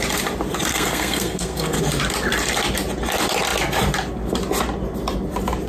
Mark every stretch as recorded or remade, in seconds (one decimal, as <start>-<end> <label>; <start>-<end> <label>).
0.0-0.7 recorded; 0.7-1.8 remade; 1.8-5.7 recorded